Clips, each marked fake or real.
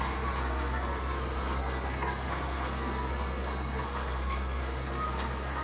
fake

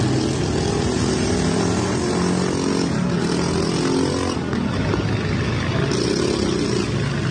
real